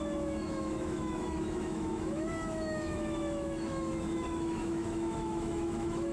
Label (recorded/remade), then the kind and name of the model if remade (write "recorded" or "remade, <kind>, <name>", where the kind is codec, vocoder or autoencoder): remade, autoencoder, DAC-VAE